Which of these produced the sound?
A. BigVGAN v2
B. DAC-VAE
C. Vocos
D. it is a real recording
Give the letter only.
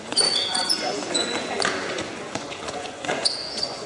C